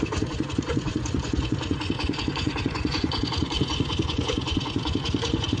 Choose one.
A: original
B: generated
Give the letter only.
B